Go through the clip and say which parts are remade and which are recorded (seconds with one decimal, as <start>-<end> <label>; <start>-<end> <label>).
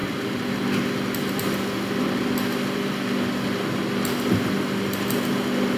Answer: 0.0-5.8 recorded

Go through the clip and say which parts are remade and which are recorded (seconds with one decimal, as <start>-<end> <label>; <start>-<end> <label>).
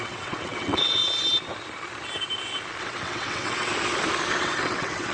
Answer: 0.0-1.0 remade; 1.0-2.8 recorded; 2.8-3.7 remade; 3.7-4.4 recorded; 4.4-5.1 remade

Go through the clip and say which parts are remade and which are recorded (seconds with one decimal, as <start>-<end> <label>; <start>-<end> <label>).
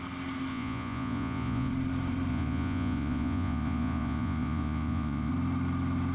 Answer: 0.0-0.5 recorded; 0.5-1.7 remade; 1.7-2.3 recorded; 2.3-5.3 remade; 5.3-6.1 recorded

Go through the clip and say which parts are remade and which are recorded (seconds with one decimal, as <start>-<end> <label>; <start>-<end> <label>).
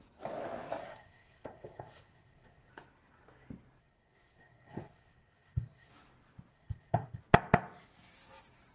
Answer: 0.0-0.8 recorded; 0.8-2.7 remade; 2.7-3.8 recorded; 3.8-5.9 remade; 5.9-6.5 recorded; 6.5-7.2 remade; 7.2-8.7 recorded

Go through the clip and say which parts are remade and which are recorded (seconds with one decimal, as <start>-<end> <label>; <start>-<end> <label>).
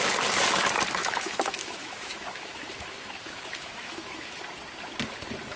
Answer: 0.0-1.0 recorded; 1.0-4.4 remade; 4.4-5.6 recorded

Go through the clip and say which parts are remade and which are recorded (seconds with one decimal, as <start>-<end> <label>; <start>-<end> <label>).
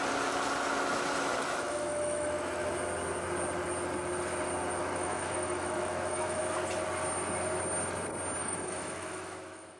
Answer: 0.0-1.4 recorded; 1.4-2.7 remade; 2.7-4.8 recorded; 4.8-6.4 remade; 6.4-8.4 recorded; 8.4-9.8 remade